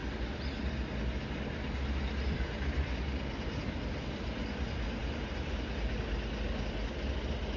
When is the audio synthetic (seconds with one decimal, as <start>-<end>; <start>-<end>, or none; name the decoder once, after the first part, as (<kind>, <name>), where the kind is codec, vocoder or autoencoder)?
none